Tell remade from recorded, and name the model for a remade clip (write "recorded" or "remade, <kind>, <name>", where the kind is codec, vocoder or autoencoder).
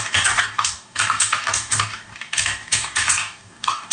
remade, codec, DAC